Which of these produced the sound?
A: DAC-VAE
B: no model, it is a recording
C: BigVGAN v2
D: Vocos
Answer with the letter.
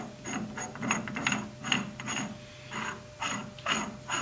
B